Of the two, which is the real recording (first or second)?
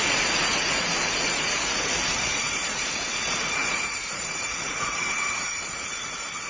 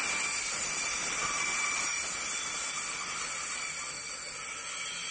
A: second